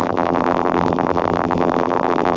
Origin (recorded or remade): remade